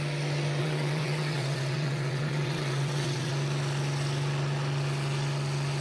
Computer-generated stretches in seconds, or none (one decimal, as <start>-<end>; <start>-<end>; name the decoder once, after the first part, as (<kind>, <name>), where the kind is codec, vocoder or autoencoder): 0.6-3.3 (vocoder, WaveNeXt)